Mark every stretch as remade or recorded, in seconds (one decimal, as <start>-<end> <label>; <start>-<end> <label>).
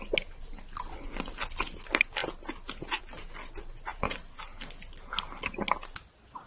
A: 0.0-3.9 recorded; 3.9-4.4 remade; 4.4-6.5 recorded